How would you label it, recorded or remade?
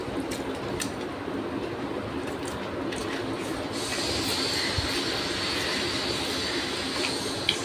recorded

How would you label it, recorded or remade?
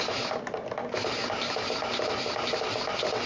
recorded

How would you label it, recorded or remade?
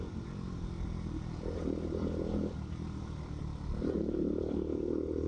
remade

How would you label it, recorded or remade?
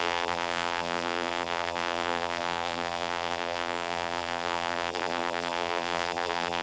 remade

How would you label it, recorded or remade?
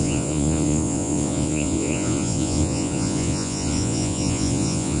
remade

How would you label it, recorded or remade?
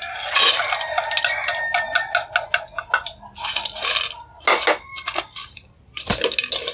recorded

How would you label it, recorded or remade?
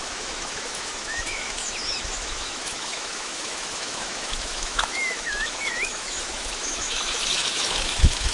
remade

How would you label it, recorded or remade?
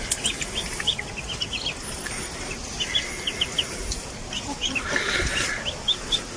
recorded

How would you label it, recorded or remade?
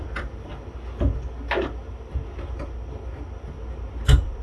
recorded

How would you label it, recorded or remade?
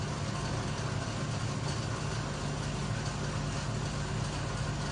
recorded